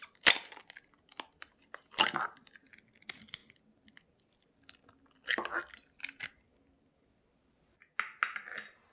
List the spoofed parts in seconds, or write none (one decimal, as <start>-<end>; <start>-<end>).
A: none